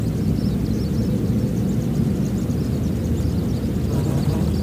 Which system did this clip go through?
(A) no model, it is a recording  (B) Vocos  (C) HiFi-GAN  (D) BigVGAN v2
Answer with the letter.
A